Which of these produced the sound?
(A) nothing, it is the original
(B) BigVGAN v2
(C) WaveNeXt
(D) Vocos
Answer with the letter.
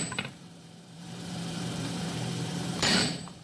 B